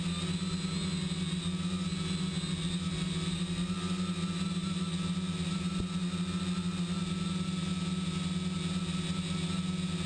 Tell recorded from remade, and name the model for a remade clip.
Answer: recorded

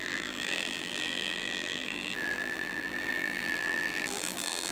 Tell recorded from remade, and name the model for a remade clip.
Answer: remade, vocoder, BigVGAN v2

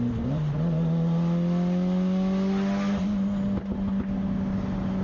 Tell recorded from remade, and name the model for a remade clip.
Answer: recorded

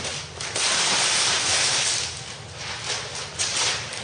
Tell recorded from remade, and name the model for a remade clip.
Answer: recorded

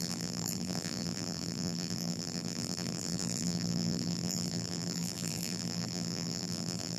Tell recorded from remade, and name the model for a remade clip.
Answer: remade, vocoder, BigVGAN v2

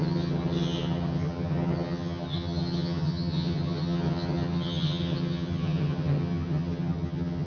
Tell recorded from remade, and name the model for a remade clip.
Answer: remade, vocoder, HiFi-GAN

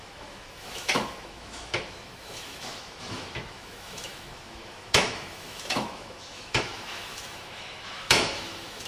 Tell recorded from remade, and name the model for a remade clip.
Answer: remade, autoencoder, DAC-VAE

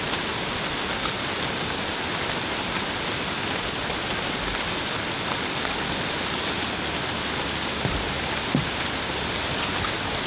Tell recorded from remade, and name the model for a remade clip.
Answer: recorded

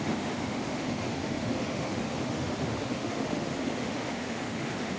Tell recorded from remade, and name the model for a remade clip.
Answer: remade, autoencoder, DAC-VAE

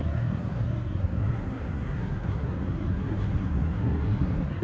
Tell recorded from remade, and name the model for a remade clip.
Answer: remade, codec, SNAC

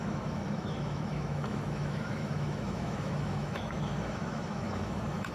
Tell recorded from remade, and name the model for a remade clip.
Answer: remade, autoencoder, DAC-VAE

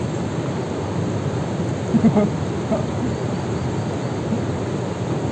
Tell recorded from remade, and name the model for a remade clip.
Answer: recorded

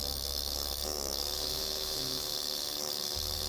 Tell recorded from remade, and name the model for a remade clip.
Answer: remade, autoencoder, DAC-VAE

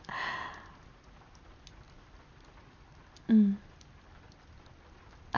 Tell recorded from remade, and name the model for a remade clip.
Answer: recorded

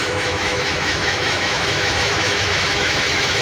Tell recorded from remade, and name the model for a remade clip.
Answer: remade, autoencoder, DAC-VAE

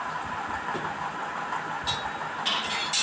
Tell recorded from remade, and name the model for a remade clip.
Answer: recorded